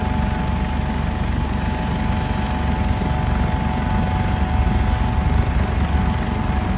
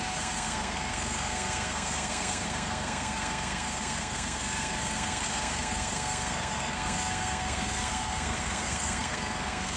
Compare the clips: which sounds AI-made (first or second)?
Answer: second